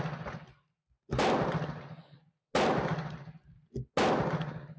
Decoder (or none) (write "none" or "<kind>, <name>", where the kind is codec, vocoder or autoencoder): none